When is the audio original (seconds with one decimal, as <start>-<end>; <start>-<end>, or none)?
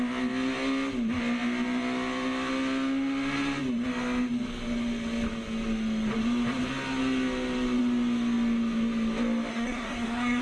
0.0-9.5